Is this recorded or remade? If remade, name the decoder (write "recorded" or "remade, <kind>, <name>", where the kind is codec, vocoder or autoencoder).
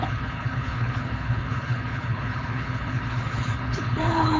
remade, codec, HILCodec